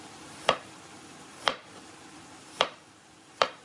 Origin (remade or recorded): remade